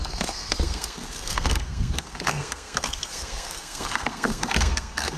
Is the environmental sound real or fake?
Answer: fake